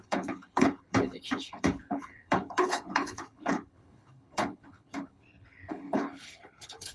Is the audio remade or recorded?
remade